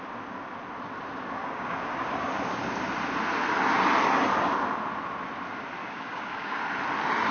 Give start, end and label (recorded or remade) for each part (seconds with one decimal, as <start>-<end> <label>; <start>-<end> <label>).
0.0-1.4 recorded; 1.4-2.3 remade; 2.3-5.8 recorded; 5.8-6.6 remade; 6.6-7.3 recorded